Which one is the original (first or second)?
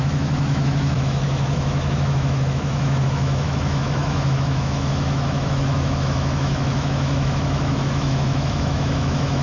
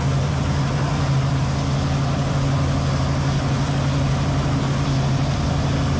second